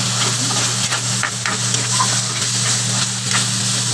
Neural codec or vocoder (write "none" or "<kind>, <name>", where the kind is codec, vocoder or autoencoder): none